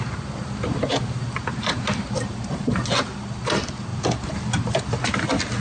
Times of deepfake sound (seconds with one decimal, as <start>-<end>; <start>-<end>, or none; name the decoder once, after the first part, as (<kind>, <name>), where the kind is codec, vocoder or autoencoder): 1.5-2.8 (vocoder, BigVGAN v2); 3.9-4.8